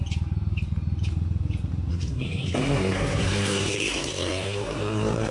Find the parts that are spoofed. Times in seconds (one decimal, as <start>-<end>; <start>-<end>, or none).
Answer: 1.9-5.3